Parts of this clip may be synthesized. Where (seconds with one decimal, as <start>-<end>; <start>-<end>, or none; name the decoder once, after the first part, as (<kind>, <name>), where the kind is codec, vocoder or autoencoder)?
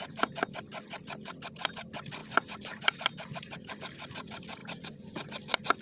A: 2.2-3.8 (vocoder, BigVGAN v2)